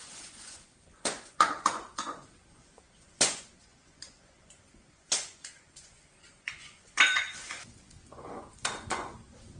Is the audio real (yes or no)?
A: no